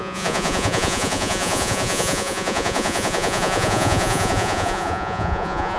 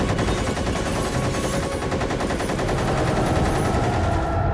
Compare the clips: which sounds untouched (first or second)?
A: second